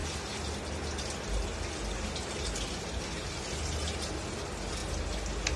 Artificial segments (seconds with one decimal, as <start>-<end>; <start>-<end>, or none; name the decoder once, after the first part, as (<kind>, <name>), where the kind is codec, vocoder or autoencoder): none

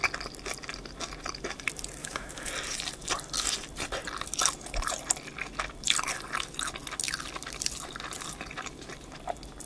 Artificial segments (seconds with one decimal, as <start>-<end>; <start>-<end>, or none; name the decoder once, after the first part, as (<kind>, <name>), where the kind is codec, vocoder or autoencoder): 2.0-2.5 (autoencoder, DAC-VAE)

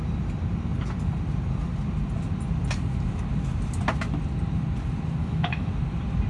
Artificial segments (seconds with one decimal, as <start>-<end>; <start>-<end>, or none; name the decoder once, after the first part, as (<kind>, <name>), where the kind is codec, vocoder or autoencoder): 5.2-5.7 (autoencoder, DAC-VAE)

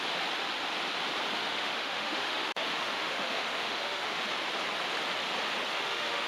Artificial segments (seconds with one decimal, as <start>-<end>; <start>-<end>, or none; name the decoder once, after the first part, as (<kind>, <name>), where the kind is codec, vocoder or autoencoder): 1.3-4.2 (autoencoder, DAC-VAE); 5.7-6.3

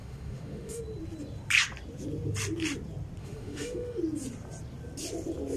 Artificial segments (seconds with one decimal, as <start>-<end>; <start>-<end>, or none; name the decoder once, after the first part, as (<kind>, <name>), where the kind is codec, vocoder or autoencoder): 0.0-0.8 (autoencoder, DAC-VAE); 3.2-4.0